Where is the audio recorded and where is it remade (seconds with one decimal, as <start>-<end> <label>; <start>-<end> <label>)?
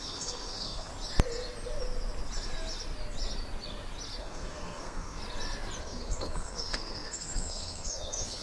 0.0-0.9 remade; 0.9-4.2 recorded; 4.2-5.2 remade; 5.2-5.8 recorded; 5.8-8.4 remade